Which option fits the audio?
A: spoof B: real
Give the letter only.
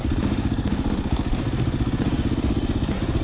B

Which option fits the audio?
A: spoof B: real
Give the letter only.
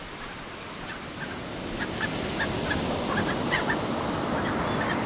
B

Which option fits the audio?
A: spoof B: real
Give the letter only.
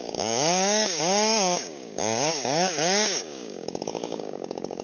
A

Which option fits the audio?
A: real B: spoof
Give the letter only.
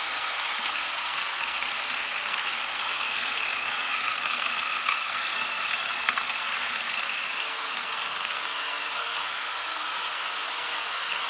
B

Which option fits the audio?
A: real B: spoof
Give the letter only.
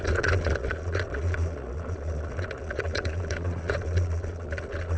B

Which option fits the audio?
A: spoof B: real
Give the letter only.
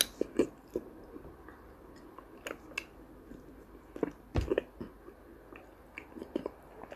B